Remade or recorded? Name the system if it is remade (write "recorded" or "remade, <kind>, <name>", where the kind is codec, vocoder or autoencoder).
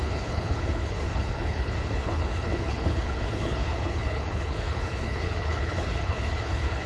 remade, codec, HILCodec